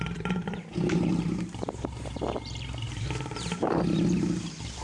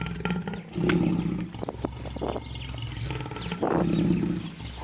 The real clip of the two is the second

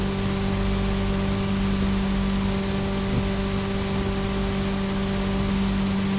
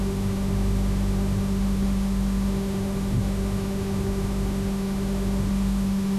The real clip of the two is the first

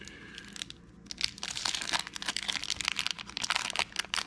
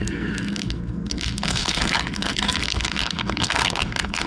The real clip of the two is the first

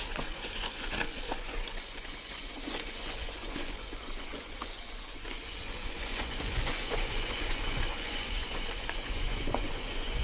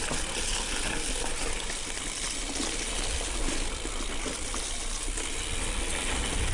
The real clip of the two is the second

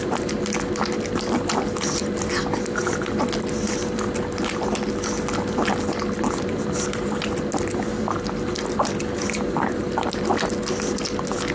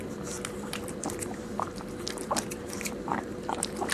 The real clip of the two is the first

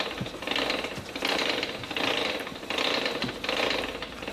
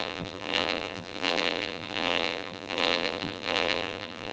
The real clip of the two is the first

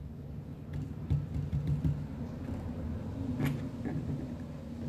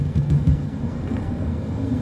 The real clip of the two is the first